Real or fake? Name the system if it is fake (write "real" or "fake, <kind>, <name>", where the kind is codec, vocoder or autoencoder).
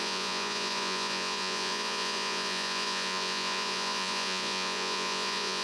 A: fake, vocoder, Vocos